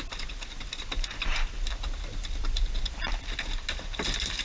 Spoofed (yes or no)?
no